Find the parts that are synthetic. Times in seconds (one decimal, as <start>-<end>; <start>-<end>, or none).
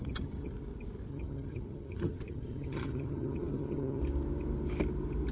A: 0.0-0.5; 1.1-4.0